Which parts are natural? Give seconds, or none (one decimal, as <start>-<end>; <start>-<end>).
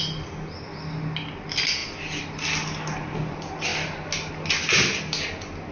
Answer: 0.0-5.7